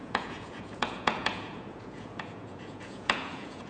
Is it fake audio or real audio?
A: fake